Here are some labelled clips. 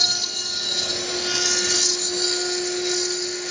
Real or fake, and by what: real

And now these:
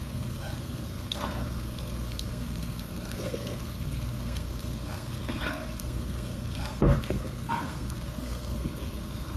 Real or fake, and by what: fake, codec, SNAC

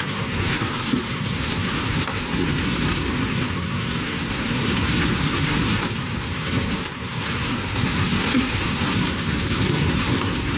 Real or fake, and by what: fake, codec, SNAC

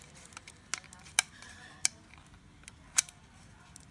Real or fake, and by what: real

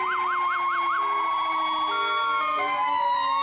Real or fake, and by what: real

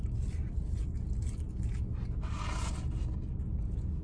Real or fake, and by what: real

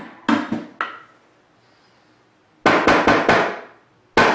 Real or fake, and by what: real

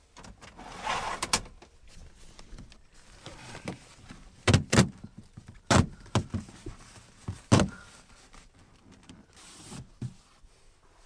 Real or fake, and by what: real